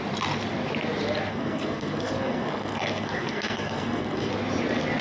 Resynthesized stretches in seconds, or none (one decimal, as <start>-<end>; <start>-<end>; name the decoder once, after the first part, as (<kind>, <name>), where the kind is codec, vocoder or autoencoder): 1.3-4.3 (codec, SNAC)